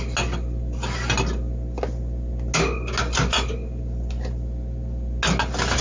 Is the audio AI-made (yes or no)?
no